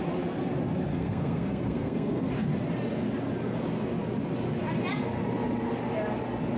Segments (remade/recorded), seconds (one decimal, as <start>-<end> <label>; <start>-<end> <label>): 0.0-0.9 recorded; 0.9-2.3 remade; 2.3-6.6 recorded